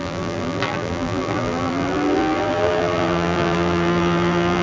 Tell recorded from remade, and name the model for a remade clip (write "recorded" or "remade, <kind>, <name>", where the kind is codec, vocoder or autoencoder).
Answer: remade, vocoder, BigVGAN v2